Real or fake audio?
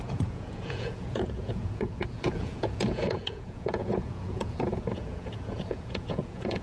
fake